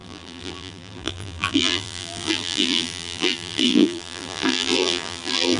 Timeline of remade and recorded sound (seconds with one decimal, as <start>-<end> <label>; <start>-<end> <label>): 0.0-5.6 remade